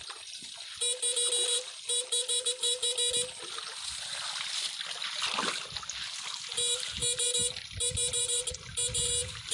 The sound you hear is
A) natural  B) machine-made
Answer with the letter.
A